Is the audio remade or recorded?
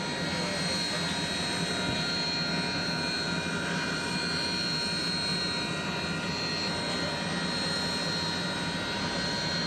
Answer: recorded